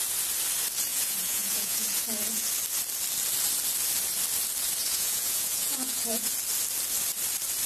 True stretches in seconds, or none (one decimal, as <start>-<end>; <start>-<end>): 0.0-0.9; 2.5-4.8; 6.3-7.7